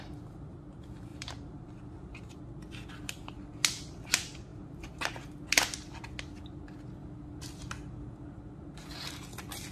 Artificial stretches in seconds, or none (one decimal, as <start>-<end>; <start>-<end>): 1.1-2.4; 4.5-5.1

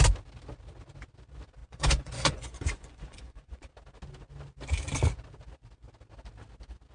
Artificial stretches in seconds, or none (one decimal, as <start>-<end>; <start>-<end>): 1.6-3.7

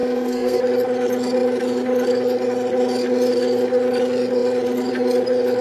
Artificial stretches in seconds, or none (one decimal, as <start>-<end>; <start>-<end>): 0.0-0.6

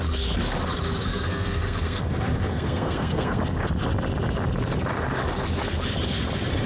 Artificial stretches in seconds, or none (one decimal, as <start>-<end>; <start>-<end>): 1.1-2.0; 2.5-3.4

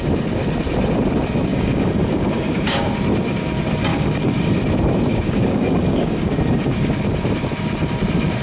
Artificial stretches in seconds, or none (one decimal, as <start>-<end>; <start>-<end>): 1.5-2.9; 3.9-4.5; 5.1-6.9

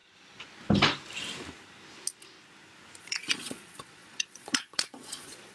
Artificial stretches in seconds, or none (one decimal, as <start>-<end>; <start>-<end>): 3.0-5.5

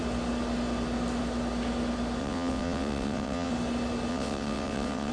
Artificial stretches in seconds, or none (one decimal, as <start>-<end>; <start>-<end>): 2.2-3.5; 4.1-5.1